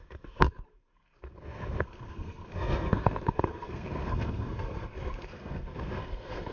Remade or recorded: remade